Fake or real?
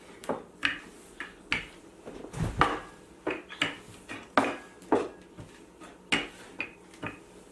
real